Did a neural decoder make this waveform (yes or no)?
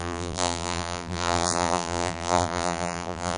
yes